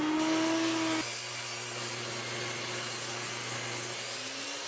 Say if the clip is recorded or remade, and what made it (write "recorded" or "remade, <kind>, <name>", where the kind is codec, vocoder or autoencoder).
recorded